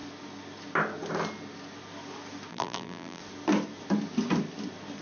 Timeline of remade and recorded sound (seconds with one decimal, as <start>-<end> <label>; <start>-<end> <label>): 0.0-2.5 recorded; 2.5-3.2 remade; 3.2-5.0 recorded